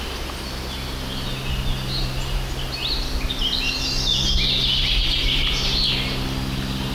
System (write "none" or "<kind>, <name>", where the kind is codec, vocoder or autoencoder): none